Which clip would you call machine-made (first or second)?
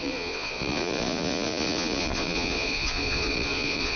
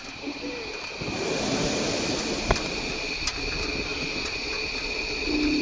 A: first